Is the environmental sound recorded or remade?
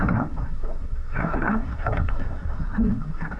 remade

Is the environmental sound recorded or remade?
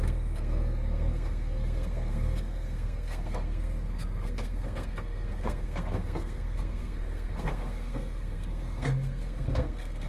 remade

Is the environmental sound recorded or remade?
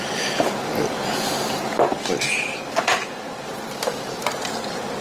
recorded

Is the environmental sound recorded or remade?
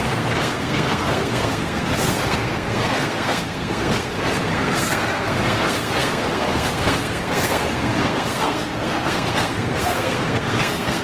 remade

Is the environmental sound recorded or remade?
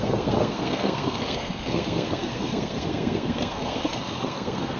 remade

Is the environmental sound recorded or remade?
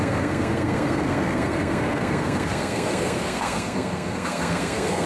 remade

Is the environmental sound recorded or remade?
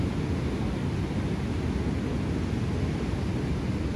recorded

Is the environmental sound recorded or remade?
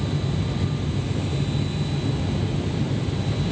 recorded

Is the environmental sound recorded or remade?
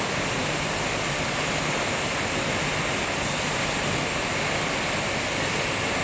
recorded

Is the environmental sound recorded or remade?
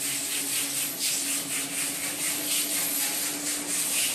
recorded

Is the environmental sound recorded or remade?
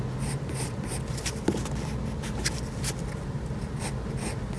recorded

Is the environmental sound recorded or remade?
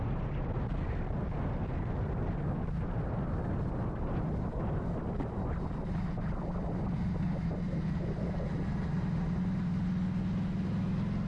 recorded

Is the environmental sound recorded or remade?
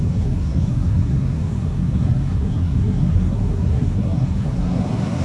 remade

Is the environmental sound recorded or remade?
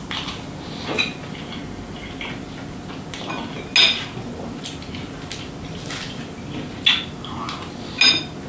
recorded